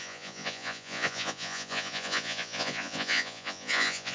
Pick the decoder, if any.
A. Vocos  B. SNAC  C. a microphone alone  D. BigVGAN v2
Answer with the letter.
A